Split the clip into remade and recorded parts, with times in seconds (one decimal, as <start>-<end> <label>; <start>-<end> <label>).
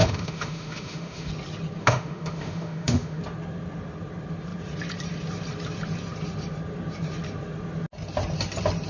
0.0-1.3 remade; 1.3-1.8 recorded; 1.8-3.2 remade; 3.2-8.9 recorded